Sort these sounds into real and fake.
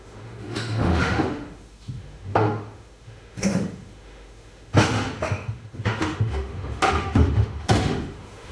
fake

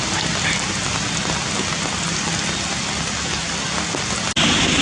real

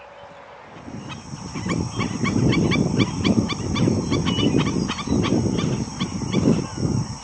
real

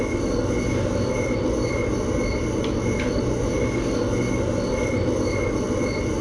real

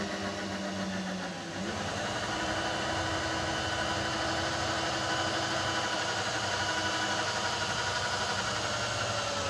real